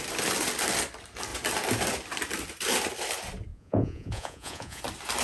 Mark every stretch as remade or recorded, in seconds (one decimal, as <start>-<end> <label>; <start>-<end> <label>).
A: 0.0-3.5 recorded; 3.5-4.8 remade; 4.8-5.2 recorded